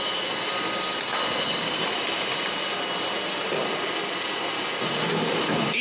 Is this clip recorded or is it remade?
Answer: recorded